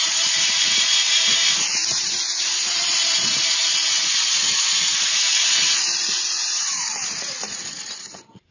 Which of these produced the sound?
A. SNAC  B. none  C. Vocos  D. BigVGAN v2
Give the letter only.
C